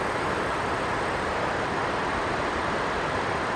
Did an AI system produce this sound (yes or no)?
yes